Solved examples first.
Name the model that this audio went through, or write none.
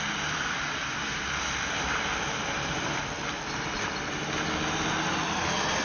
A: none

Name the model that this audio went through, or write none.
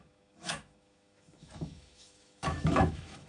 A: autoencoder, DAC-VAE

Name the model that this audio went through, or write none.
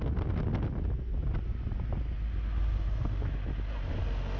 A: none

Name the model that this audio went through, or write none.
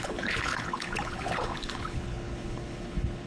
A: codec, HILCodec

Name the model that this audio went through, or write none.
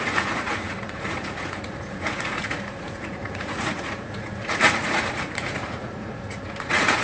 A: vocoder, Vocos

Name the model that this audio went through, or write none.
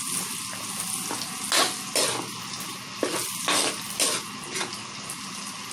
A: none